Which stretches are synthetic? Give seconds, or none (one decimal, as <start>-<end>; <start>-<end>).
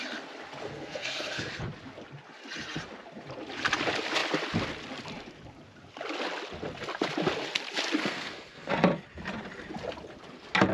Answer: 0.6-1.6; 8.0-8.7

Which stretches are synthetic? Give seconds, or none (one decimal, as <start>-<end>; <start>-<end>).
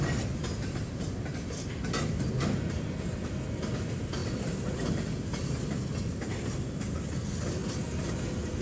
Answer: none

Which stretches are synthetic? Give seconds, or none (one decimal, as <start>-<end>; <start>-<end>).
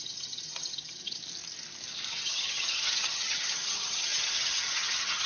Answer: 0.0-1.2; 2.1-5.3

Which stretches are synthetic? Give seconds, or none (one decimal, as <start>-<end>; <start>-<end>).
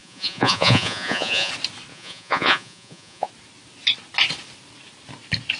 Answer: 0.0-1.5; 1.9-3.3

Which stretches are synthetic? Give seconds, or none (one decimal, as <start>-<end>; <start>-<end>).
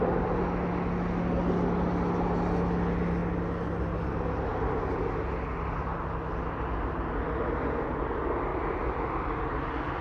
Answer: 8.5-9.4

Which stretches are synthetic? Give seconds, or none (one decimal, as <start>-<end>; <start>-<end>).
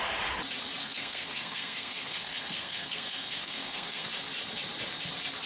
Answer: 0.8-4.1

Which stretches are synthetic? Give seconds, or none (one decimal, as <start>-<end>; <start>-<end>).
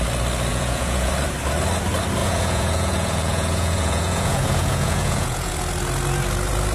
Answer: 0.5-1.1; 2.2-5.5